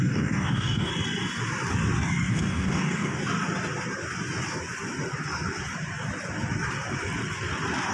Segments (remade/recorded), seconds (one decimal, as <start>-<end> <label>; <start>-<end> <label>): 0.0-0.9 remade; 0.9-2.3 recorded; 2.3-3.2 remade; 3.2-7.9 recorded